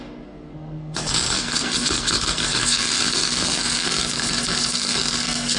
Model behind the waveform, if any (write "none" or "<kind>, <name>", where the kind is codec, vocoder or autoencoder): codec, SNAC